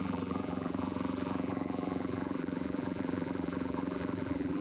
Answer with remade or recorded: remade